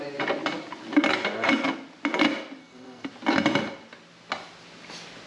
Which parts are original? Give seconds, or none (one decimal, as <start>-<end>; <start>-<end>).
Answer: 0.0-2.6; 3.1-5.3